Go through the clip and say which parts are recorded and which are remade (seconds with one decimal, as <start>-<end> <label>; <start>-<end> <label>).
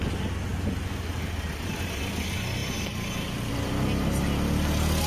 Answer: 0.0-5.1 recorded